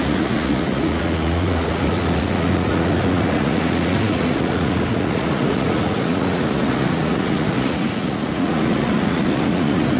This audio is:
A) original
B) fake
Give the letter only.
B